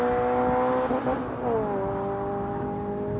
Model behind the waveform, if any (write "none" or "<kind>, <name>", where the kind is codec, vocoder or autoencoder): none